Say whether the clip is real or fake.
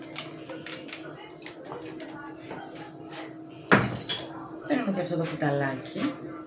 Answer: real